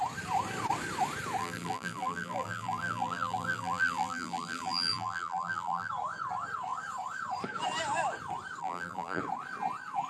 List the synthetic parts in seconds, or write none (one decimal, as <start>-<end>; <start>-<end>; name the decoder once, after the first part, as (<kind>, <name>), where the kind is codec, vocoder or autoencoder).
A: 1.4-5.9 (vocoder, BigVGAN v2); 8.6-9.2